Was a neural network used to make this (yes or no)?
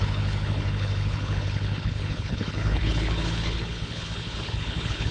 yes